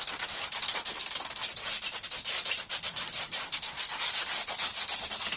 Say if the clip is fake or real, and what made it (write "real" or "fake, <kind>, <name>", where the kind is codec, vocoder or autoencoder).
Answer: real